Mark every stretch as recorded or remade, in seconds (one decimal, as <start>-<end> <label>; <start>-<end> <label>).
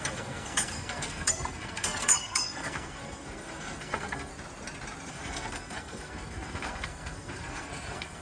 0.0-4.3 remade; 4.3-5.1 recorded; 5.1-8.2 remade